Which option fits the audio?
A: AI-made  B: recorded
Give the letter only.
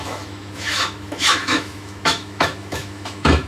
A